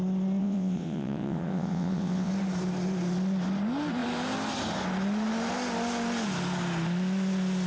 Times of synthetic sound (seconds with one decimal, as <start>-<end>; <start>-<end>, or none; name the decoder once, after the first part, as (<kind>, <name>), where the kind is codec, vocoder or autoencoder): 0.4-2.3 (vocoder, WaveNeXt)